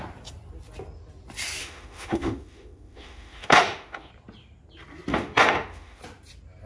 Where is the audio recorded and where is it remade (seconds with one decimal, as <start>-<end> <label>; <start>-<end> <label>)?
0.0-1.6 recorded; 1.6-4.1 remade; 4.1-5.1 recorded; 5.1-6.0 remade; 6.0-6.7 recorded